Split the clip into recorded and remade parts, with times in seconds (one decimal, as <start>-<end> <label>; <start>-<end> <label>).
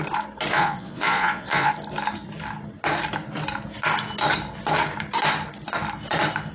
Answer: 0.0-0.5 recorded; 0.5-1.7 remade; 1.7-6.5 recorded